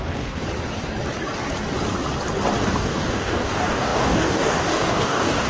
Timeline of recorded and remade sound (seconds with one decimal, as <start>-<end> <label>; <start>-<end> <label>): 0.0-0.4 remade; 0.4-2.6 recorded; 2.6-5.5 remade

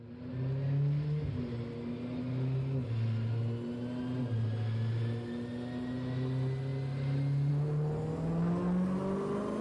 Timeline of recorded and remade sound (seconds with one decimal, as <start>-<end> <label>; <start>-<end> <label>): 0.0-9.6 recorded

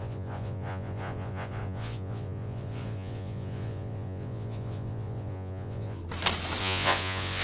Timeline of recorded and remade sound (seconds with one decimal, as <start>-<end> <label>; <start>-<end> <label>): 0.0-6.0 remade; 6.0-6.6 recorded; 6.6-7.4 remade

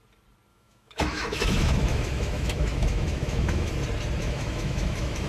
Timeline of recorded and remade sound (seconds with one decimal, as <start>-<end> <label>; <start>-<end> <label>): 0.0-0.5 recorded; 0.5-3.7 remade; 3.7-4.2 recorded; 4.2-5.3 remade